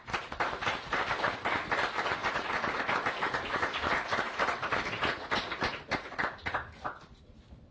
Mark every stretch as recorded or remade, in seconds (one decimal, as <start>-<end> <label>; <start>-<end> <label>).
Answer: 0.0-2.2 recorded; 2.2-2.8 remade; 2.8-7.7 recorded